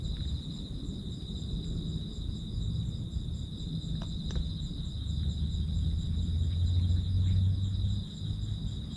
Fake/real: real